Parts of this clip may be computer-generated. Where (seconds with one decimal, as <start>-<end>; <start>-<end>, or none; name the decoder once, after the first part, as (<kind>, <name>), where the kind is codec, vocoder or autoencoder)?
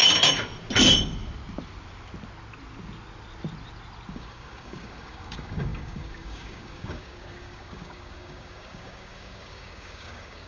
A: 4.1-10.5 (codec, DAC)